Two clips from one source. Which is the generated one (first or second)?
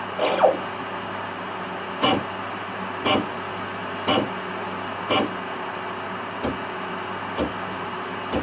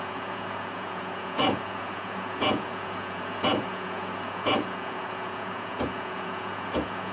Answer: second